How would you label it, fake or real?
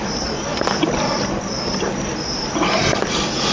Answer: real